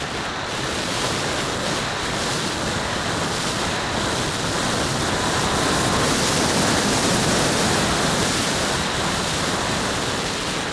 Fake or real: real